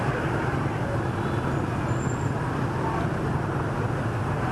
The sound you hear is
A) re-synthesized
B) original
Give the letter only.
B